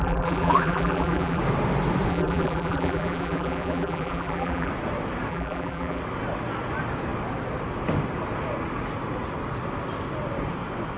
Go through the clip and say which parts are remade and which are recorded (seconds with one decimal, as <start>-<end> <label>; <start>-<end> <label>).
0.0-1.4 remade; 1.4-2.1 recorded; 2.1-4.7 remade; 4.7-5.3 recorded; 5.3-6.0 remade; 6.0-11.0 recorded